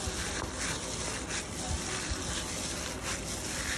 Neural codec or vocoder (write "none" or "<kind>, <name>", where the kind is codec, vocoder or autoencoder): none